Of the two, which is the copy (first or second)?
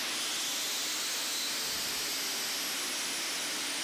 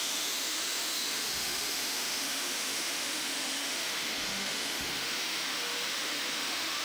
second